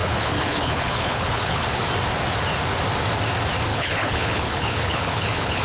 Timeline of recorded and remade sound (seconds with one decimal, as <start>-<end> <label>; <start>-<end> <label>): 0.0-1.8 remade; 1.8-3.7 recorded; 3.7-5.6 remade